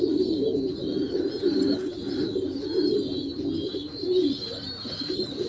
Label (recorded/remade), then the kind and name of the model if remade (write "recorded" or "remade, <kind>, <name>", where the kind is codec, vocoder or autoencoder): recorded